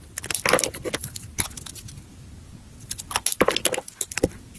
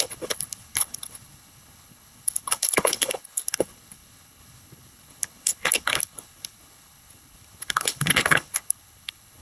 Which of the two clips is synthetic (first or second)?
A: second